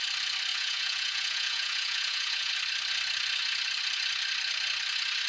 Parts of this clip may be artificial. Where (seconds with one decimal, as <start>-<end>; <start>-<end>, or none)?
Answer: 0.5-2.5